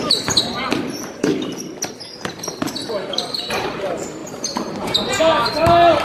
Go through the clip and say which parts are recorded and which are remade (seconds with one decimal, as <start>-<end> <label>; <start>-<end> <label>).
0.0-1.3 remade; 1.3-3.4 recorded; 3.4-6.0 remade